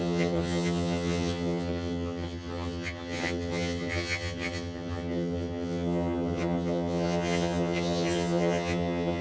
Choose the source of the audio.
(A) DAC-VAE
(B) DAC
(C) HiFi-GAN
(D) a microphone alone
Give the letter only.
C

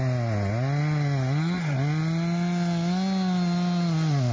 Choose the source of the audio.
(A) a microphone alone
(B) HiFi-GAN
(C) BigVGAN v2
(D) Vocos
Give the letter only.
A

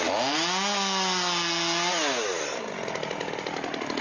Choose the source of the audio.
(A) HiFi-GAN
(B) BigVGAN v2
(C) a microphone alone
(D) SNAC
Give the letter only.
C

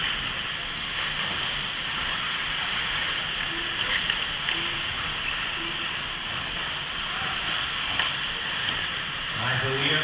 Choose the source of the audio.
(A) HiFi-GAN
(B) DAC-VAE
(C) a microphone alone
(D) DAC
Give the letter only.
C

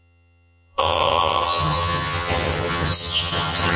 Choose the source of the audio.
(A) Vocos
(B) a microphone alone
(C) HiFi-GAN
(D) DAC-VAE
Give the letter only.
C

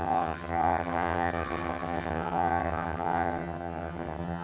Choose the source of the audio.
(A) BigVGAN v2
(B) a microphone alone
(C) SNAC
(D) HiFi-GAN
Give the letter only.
D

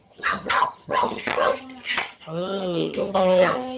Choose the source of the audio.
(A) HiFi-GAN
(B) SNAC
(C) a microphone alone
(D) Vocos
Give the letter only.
A